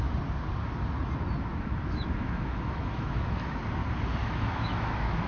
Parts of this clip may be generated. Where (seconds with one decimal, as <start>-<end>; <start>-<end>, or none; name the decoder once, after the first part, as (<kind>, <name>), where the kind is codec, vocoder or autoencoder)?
1.5-3.6 (autoencoder, DAC-VAE); 4.2-5.3